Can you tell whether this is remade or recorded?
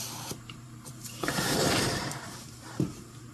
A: remade